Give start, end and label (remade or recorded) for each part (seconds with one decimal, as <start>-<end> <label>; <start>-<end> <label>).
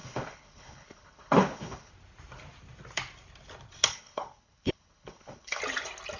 0.0-1.9 remade; 1.9-3.9 recorded; 3.9-5.6 remade; 5.6-6.2 recorded